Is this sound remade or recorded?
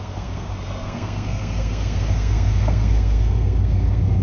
remade